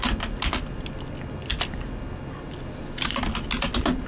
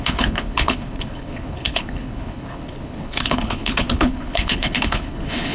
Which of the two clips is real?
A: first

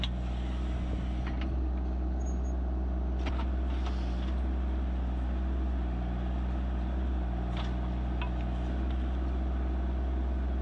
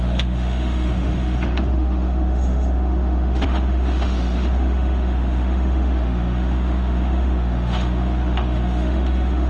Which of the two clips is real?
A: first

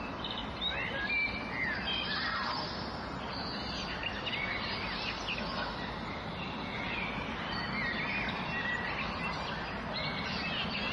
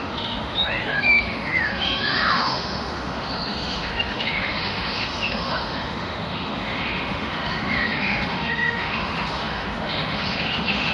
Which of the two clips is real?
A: first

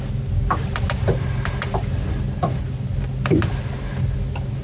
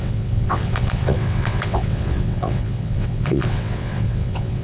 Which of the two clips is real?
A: first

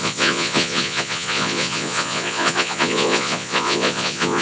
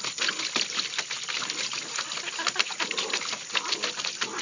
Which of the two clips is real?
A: second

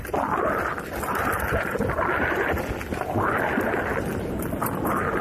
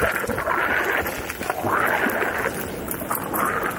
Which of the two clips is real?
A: second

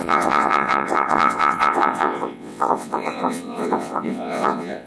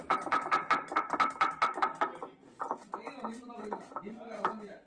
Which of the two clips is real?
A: second